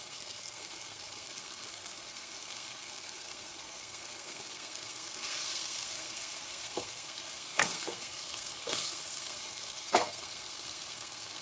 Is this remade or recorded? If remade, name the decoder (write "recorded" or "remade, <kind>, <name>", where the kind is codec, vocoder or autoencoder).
remade, codec, SNAC